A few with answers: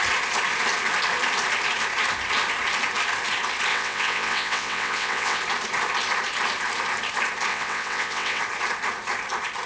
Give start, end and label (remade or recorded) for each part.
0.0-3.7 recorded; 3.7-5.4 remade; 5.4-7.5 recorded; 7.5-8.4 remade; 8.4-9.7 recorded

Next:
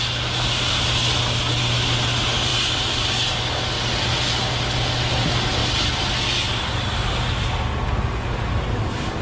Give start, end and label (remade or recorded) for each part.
0.0-9.2 recorded

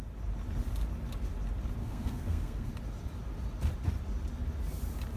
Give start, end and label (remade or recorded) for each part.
0.0-1.8 recorded; 1.8-2.7 remade; 2.7-5.2 recorded

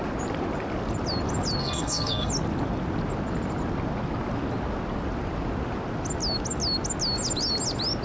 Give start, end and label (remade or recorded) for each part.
0.0-1.6 recorded; 1.6-2.3 remade; 2.3-8.0 recorded

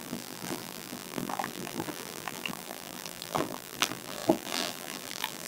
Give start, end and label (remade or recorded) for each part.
0.0-5.5 remade

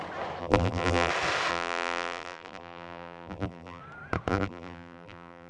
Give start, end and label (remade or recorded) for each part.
0.0-0.4 recorded; 0.4-1.1 remade; 1.1-1.5 recorded; 1.5-3.8 remade; 3.8-4.3 recorded; 4.3-5.5 remade

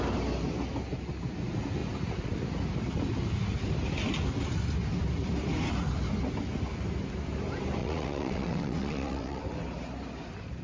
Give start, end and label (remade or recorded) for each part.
0.0-7.8 recorded; 7.8-9.4 remade; 9.4-10.6 recorded